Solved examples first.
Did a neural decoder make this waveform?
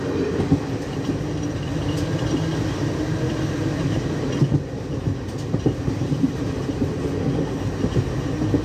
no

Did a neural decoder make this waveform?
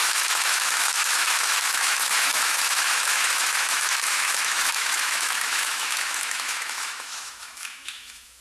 yes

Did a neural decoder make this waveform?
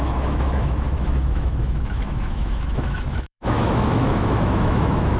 yes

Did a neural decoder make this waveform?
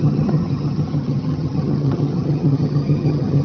yes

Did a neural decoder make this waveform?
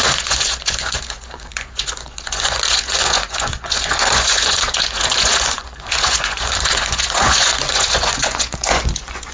yes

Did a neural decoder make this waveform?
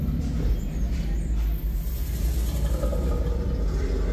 no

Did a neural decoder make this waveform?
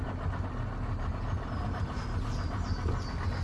no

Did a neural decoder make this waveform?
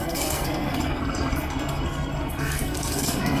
yes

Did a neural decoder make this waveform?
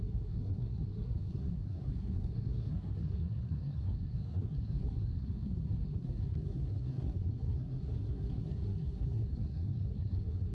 yes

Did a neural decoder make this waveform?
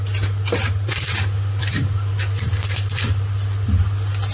yes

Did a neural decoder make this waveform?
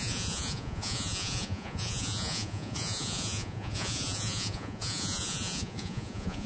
yes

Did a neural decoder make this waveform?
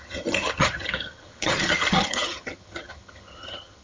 yes